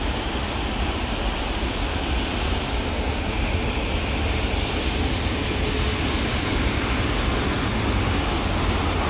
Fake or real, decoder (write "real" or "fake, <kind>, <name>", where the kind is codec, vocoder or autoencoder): real